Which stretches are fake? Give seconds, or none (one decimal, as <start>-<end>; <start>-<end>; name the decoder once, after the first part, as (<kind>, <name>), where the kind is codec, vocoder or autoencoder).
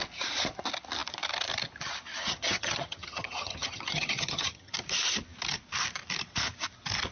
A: 2.2-4.7 (vocoder, HiFi-GAN)